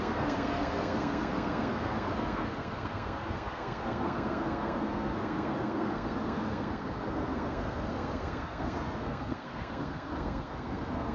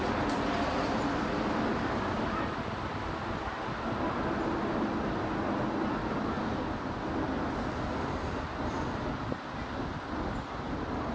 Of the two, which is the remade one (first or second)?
first